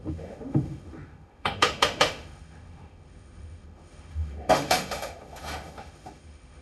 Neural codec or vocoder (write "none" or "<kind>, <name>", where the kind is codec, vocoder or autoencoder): autoencoder, DAC-VAE